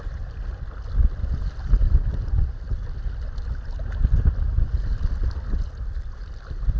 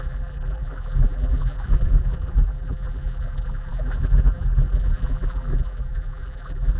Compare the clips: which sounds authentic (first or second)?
first